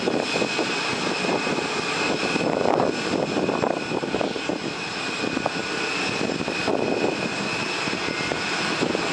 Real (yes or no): yes